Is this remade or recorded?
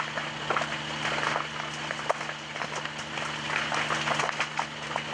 recorded